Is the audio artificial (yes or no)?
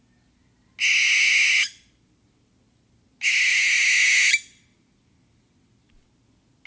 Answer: no